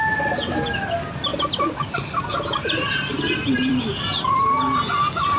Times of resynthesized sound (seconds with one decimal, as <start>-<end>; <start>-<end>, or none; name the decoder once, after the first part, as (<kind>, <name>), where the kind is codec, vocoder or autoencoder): none